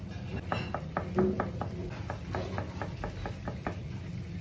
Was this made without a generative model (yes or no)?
yes